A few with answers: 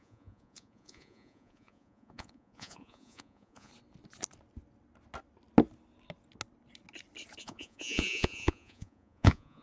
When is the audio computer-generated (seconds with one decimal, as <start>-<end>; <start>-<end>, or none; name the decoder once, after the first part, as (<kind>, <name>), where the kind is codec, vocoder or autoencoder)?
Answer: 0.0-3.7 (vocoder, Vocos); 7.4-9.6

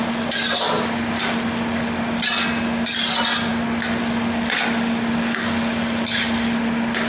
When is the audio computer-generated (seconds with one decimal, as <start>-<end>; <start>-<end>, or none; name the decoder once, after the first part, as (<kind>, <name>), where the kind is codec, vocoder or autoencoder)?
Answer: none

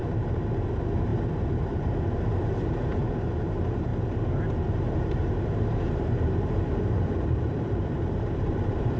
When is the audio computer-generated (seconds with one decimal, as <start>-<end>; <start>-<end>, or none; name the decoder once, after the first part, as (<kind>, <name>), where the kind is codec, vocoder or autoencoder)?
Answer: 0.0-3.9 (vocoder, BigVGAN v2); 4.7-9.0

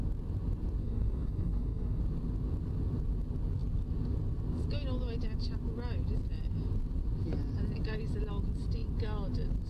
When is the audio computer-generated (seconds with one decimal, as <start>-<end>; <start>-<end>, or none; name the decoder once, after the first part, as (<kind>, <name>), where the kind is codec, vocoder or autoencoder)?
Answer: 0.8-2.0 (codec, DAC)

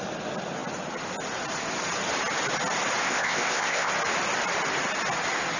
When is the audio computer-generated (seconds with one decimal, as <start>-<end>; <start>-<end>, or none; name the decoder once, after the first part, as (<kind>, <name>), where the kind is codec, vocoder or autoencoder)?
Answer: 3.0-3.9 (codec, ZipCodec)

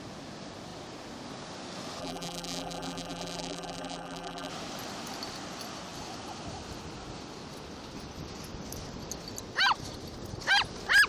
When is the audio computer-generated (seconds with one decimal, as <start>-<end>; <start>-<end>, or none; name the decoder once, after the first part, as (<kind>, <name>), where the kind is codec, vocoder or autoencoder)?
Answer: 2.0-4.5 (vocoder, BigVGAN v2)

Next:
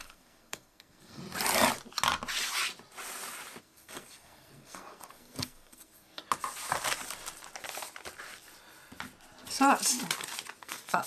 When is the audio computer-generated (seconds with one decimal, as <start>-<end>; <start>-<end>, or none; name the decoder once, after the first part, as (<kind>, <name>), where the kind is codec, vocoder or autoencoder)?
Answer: 0.0-1.2 (codec, SNAC); 3.6-6.2; 10.6-11.1